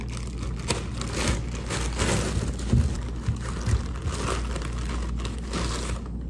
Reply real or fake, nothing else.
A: real